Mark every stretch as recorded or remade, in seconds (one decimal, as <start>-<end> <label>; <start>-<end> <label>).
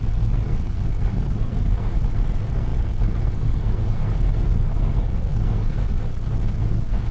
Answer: 0.0-7.1 remade